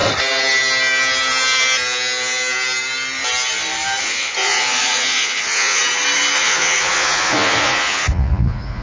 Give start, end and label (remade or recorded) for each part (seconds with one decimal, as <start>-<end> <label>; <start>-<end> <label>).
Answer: 0.0-4.0 recorded; 4.0-5.8 remade; 5.8-6.4 recorded; 6.4-8.8 remade